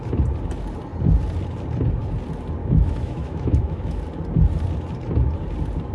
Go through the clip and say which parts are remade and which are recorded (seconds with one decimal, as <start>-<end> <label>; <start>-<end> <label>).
0.0-2.6 recorded; 2.6-4.0 remade; 4.0-5.9 recorded